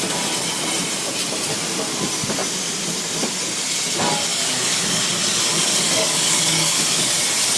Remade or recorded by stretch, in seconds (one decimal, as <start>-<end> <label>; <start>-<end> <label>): 0.0-4.3 recorded; 4.3-5.0 remade; 5.0-5.5 recorded; 5.5-7.1 remade; 7.1-7.6 recorded